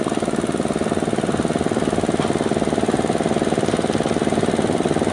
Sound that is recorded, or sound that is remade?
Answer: recorded